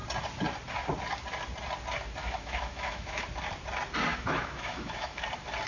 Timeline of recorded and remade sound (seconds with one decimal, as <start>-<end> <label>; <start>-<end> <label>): 0.0-2.2 recorded; 2.2-3.2 remade; 3.2-4.1 recorded; 4.1-5.2 remade; 5.2-5.7 recorded